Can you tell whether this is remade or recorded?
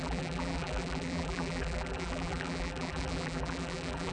remade